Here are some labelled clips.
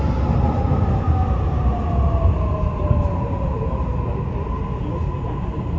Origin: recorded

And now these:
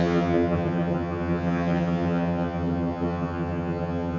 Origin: remade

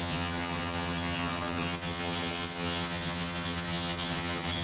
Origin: remade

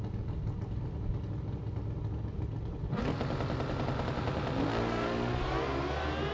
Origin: recorded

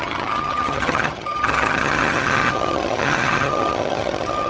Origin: remade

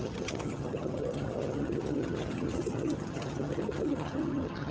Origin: remade